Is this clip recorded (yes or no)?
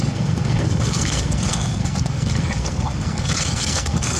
no